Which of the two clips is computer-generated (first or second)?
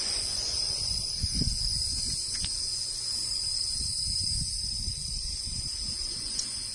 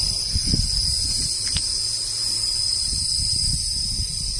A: first